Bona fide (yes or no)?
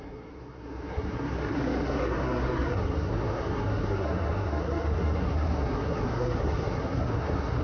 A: no